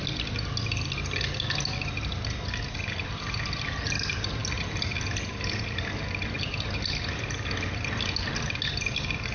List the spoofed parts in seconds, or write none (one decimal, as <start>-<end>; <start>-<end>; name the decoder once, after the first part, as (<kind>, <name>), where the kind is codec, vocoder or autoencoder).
none